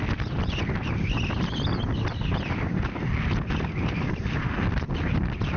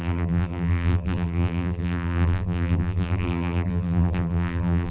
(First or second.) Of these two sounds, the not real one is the second